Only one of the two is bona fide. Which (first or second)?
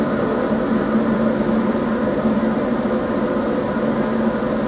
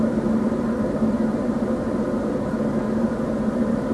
first